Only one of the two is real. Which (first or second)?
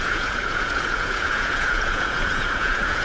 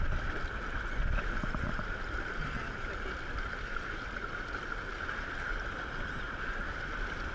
second